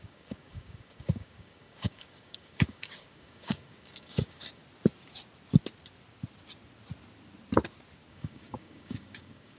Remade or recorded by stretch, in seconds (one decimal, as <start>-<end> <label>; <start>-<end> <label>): 0.0-4.6 remade; 4.6-8.1 recorded; 8.1-9.6 remade

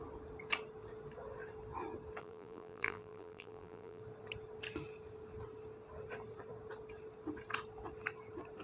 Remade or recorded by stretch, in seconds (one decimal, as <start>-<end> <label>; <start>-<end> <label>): 0.0-2.2 recorded; 2.2-4.0 remade; 4.0-8.6 recorded

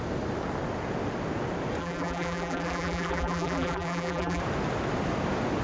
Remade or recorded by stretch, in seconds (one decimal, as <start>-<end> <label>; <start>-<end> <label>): 0.0-1.8 recorded; 1.8-4.4 remade; 4.4-5.6 recorded

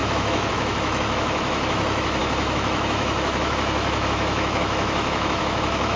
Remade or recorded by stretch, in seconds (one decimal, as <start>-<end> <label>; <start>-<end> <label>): 0.0-6.0 remade

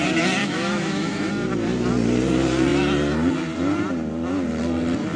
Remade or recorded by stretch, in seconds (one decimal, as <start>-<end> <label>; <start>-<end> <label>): 0.0-0.4 recorded; 0.4-1.3 remade; 1.3-5.2 recorded

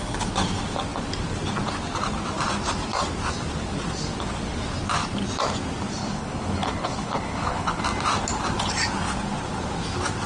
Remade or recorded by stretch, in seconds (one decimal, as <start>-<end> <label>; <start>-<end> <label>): 0.0-6.0 recorded; 6.0-7.8 remade; 7.8-10.3 recorded